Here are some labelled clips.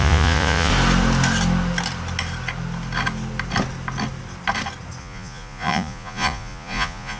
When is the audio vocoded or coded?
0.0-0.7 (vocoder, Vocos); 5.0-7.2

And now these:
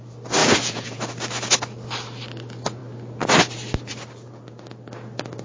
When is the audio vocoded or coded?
0.4-1.0 (vocoder, Vocos)

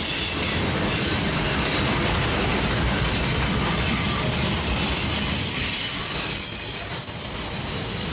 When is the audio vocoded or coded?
none

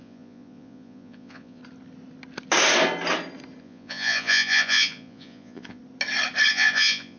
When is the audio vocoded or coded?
0.0-1.6 (vocoder, Vocos); 3.6-5.8; 6.5-7.2

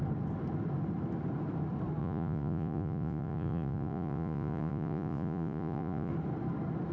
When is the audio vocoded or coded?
2.0-6.1 (vocoder, Vocos)